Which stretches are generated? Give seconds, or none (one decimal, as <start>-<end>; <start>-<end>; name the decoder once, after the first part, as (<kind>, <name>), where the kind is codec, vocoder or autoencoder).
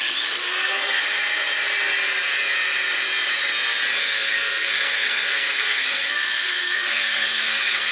0.4-1.0 (codec, SNAC); 4.0-7.9